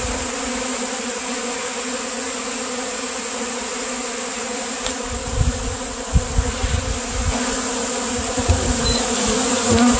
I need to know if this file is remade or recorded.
recorded